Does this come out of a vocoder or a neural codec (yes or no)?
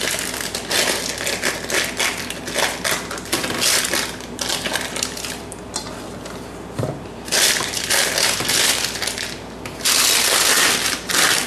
no